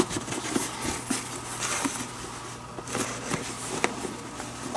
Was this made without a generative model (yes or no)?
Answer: yes